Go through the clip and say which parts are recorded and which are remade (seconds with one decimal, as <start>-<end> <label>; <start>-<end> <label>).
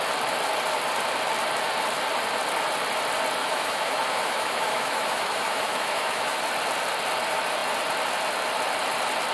0.0-3.4 recorded; 3.4-6.4 remade; 6.4-9.3 recorded